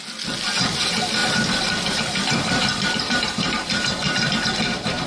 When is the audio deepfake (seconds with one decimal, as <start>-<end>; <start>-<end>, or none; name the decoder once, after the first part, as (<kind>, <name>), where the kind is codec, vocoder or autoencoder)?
1.2-4.3 (vocoder, BigVGAN v2)

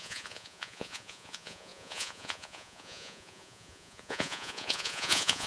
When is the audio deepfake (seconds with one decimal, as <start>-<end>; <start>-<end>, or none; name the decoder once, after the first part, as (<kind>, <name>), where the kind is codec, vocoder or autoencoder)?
0.0-5.5 (vocoder, Vocos)

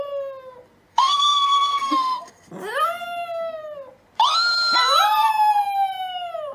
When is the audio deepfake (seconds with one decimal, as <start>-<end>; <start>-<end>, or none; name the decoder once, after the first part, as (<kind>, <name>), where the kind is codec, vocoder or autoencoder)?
0.9-2.5 (codec, SNAC)